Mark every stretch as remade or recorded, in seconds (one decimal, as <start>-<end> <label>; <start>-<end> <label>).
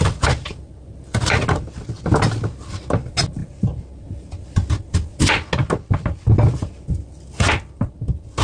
0.0-8.4 recorded